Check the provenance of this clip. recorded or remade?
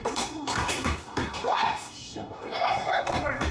remade